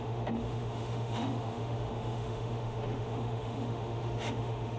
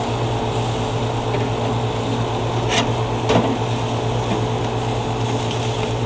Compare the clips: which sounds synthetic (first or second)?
first